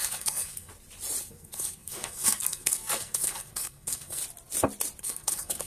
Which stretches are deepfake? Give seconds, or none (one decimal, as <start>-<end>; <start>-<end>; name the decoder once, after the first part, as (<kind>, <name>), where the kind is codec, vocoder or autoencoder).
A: 0.0-0.7 (codec, SNAC); 1.2-4.2; 5.0-5.7